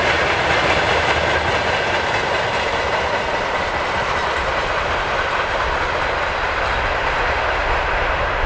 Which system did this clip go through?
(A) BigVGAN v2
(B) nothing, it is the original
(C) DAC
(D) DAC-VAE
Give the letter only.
B